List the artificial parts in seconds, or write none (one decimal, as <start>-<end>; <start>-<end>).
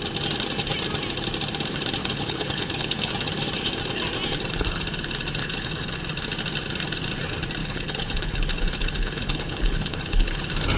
2.0-3.1; 5.4-6.0; 7.6-10.4